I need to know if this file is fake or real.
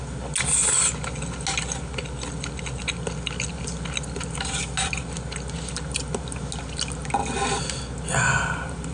real